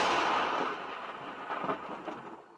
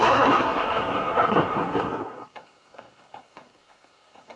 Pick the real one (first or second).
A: first